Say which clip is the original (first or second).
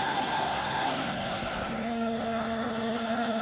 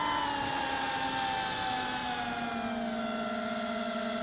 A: second